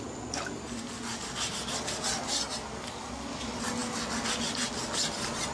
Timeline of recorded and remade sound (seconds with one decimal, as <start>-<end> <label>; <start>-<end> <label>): 0.0-5.5 recorded